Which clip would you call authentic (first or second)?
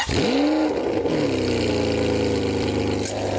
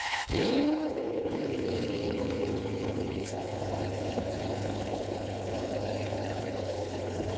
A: first